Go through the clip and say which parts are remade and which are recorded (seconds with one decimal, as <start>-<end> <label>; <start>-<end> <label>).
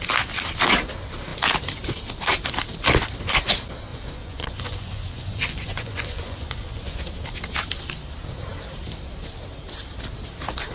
0.0-3.9 recorded; 3.9-7.0 remade; 7.0-10.7 recorded